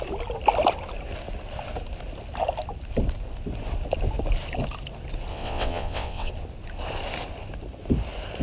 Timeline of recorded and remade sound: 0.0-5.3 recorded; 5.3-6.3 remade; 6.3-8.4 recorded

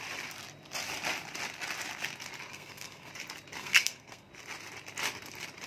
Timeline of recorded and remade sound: 0.0-2.5 recorded; 2.5-3.1 remade; 3.1-3.6 recorded; 3.6-4.3 remade; 4.3-5.7 recorded

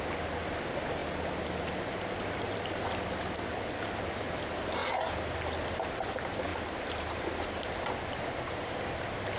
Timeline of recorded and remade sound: 0.0-9.4 recorded

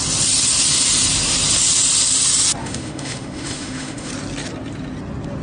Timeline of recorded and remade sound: 0.0-2.6 recorded; 2.6-4.1 remade; 4.1-5.4 recorded

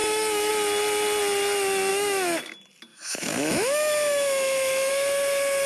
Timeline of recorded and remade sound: 0.0-0.5 remade; 0.5-1.9 recorded; 1.9-2.4 remade; 2.4-2.9 recorded; 2.9-4.9 remade; 4.9-5.7 recorded

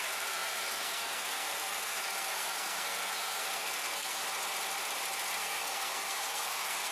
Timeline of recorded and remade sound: 0.0-4.2 remade; 4.2-5.4 recorded; 5.4-6.9 remade

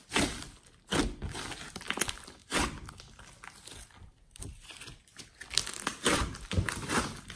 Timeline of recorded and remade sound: 0.0-7.4 recorded